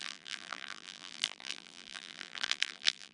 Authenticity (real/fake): fake